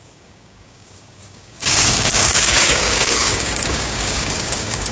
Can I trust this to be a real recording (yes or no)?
no